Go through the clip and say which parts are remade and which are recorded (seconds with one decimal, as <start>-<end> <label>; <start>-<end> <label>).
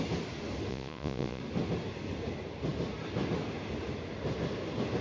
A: 0.0-0.7 recorded; 0.7-1.4 remade; 1.4-5.0 recorded